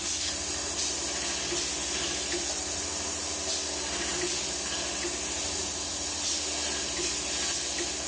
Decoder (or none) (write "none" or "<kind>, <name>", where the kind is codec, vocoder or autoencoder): none